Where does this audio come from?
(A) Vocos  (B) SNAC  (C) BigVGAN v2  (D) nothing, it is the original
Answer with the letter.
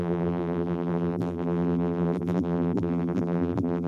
C